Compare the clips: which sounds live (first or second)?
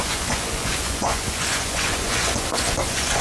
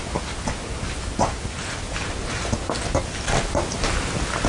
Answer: second